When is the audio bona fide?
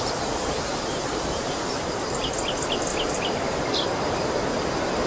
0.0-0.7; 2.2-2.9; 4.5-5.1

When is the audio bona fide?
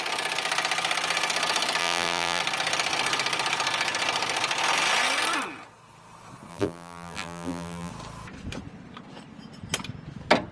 0.0-1.8; 2.4-6.5; 7.9-10.5